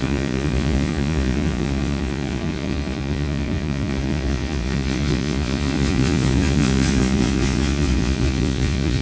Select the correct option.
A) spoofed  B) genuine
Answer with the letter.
A